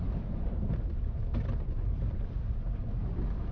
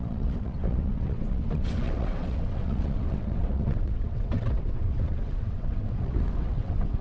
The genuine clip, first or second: first